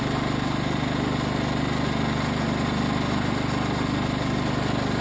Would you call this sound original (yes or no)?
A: yes